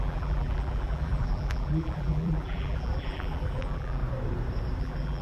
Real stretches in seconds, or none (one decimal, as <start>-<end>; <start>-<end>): 4.0-4.8